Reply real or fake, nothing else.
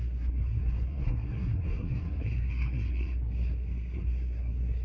fake